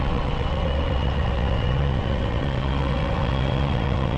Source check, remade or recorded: remade